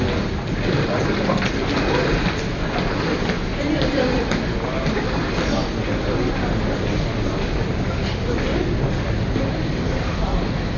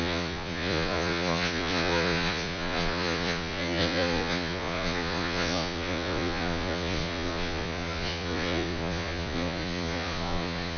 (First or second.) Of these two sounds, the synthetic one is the second